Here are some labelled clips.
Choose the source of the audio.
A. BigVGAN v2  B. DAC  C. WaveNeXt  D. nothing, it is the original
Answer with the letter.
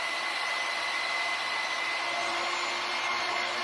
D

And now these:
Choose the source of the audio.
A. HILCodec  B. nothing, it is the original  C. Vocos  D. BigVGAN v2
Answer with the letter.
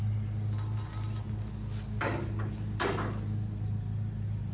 B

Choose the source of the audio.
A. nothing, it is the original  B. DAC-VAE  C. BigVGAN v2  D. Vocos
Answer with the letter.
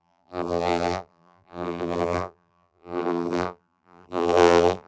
C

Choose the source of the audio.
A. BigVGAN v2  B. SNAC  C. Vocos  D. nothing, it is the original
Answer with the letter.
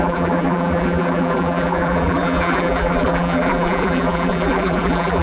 A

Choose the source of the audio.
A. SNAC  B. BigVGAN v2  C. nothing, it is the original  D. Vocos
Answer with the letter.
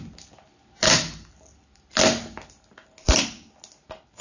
C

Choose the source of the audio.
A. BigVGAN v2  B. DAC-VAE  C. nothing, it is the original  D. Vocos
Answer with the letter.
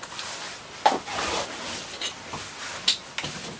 C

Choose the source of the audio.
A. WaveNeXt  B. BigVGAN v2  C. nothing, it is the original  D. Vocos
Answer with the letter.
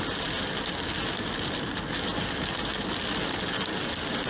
C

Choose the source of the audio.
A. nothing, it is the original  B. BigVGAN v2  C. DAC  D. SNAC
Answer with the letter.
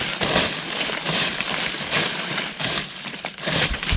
B